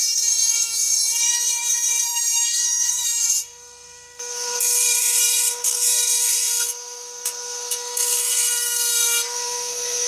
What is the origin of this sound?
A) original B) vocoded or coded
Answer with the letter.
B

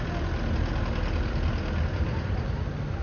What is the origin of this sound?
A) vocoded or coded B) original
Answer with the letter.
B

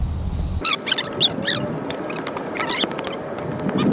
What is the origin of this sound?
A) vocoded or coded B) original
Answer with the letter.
B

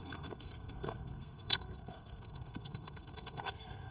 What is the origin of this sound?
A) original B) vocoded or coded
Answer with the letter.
B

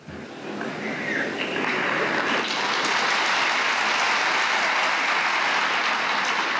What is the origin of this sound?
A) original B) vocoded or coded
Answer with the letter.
A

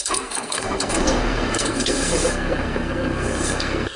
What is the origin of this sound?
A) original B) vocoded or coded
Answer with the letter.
B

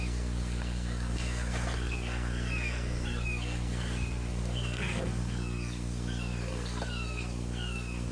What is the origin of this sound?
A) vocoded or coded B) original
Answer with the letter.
A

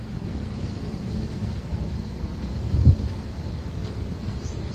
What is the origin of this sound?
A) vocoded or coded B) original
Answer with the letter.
A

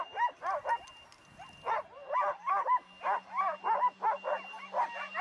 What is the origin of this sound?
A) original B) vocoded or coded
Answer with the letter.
A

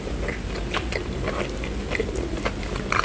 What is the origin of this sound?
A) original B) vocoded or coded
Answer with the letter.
A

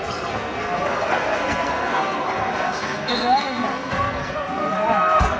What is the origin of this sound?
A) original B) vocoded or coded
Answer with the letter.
B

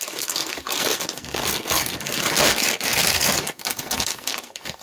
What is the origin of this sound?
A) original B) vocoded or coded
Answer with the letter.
B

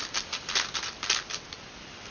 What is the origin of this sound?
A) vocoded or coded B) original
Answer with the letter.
B